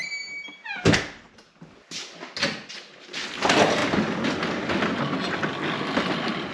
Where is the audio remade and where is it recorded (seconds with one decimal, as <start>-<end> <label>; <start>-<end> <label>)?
0.0-6.5 recorded